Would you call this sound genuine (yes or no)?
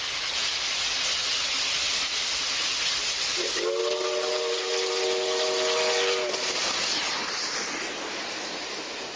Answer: yes